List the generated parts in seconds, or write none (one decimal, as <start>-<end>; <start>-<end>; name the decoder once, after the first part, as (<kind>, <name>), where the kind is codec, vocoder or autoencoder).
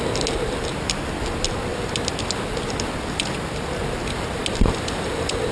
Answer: none